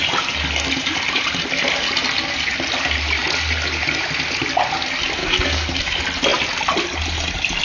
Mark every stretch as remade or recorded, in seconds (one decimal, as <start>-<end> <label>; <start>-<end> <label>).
0.0-5.2 recorded; 5.2-5.8 remade; 5.8-7.6 recorded